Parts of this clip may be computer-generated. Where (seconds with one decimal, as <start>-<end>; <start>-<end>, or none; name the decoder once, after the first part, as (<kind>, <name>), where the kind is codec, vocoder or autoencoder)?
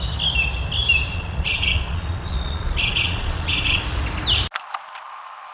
1.1-3.8 (vocoder, Vocos)